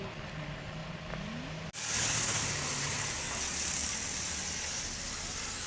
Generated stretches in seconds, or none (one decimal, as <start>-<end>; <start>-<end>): none